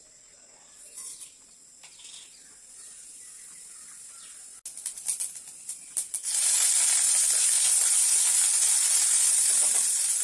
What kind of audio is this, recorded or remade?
recorded